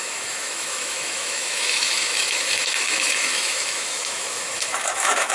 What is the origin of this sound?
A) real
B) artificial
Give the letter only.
B